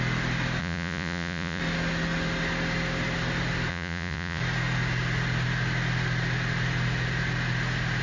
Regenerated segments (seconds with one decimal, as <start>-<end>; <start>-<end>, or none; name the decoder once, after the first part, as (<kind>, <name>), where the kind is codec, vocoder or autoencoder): 0.6-1.6 (vocoder, Vocos); 3.7-4.4